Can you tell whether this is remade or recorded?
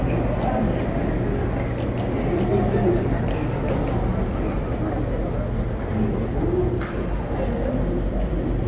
recorded